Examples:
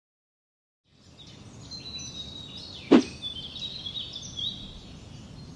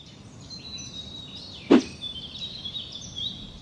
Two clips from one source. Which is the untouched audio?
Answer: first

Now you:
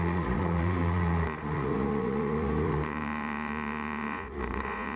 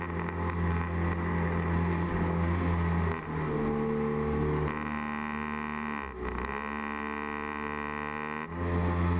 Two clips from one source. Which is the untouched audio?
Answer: second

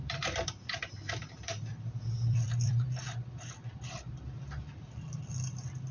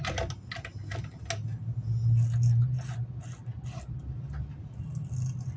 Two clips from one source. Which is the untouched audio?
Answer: second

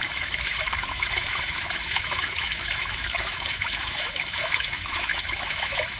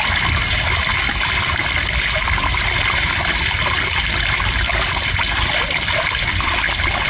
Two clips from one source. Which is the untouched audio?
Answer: second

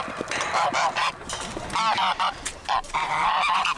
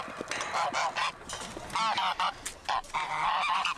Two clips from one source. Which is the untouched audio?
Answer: second